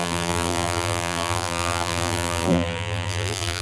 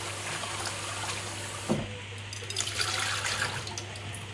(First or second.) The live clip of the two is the second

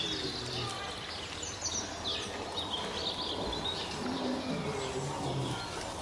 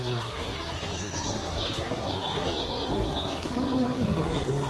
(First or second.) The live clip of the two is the first